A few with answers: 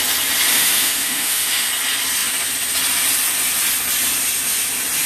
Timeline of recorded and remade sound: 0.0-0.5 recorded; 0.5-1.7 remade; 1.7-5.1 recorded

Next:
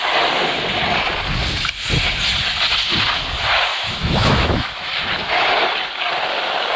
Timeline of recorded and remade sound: 0.0-3.7 recorded; 3.7-4.9 remade; 4.9-6.8 recorded

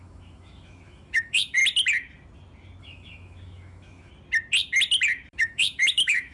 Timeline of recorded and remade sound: 0.0-1.6 remade; 1.6-2.8 recorded; 2.8-4.1 remade; 4.1-5.3 recorded; 5.3-6.3 remade

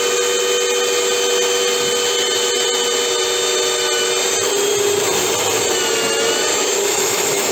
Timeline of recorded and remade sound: 0.0-6.5 recorded; 6.5-7.5 remade

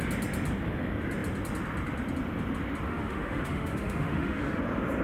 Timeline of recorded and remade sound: 0.0-2.9 recorded; 2.9-4.6 remade; 4.6-5.0 recorded